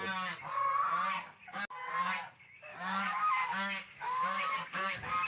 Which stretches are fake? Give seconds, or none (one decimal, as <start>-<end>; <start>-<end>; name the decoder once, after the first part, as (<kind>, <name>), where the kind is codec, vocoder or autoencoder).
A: 2.7-5.3 (codec, DAC)